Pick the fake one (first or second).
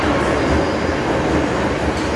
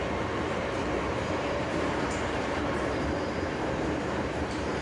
second